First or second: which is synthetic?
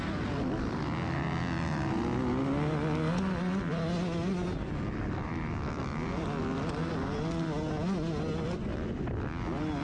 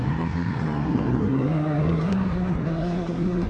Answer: second